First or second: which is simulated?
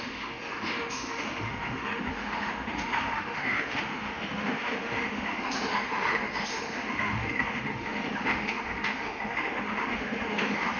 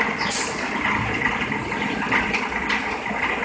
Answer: first